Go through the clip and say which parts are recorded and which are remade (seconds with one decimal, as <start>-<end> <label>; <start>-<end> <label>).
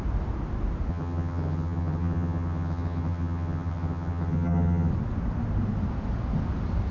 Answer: 0.0-0.9 recorded; 0.9-4.9 remade; 4.9-6.9 recorded